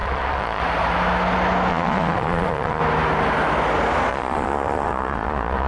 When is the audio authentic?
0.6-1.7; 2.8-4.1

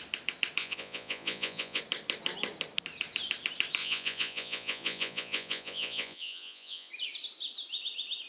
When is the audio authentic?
0.0-0.6; 1.8-3.8; 6.9-8.3

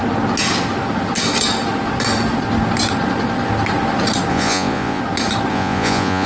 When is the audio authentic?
0.0-4.3; 5.0-5.5

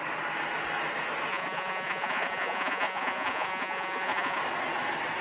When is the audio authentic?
0.0-1.3; 4.4-5.2

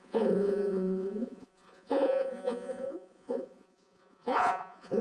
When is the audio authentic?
none